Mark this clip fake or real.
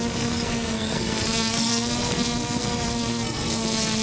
fake